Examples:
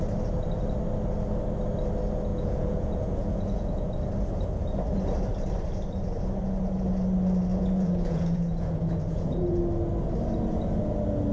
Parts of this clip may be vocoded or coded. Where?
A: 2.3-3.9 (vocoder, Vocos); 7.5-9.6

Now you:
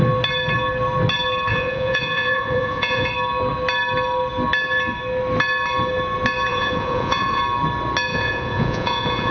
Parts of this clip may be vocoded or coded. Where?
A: 1.5-3.1 (vocoder, Vocos); 6.5-7.4; 8.1-9.3

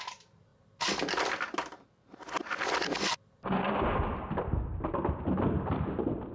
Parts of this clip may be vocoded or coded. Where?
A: none

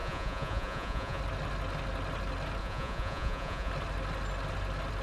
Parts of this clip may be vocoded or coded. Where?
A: 0.0-1.2 (vocoder, Vocos); 2.6-3.7

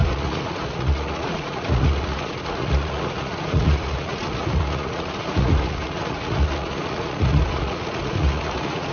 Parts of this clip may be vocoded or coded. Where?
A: 0.0-8.9 (vocoder, Vocos)

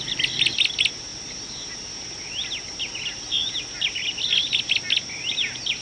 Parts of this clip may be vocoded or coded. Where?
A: none

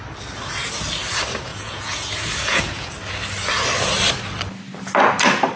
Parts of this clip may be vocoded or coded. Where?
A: 1.5-2.9 (vocoder, Vocos)

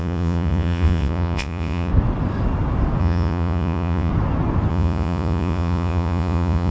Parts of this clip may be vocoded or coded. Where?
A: 0.0-1.9 (vocoder, Vocos); 3.0-4.1; 4.7-6.7